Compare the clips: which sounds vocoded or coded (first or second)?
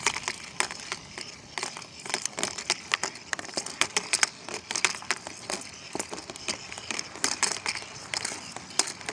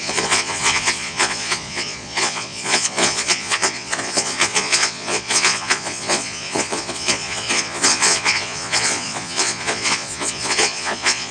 second